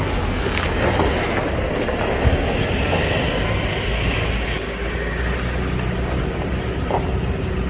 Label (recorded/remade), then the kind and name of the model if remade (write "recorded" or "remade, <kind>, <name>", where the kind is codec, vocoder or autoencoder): recorded